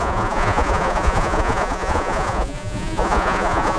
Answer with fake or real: fake